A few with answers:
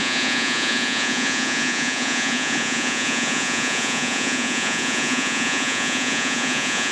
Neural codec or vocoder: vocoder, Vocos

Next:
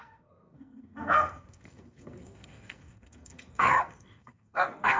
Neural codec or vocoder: codec, SNAC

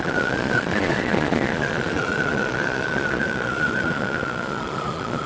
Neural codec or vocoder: vocoder, Vocos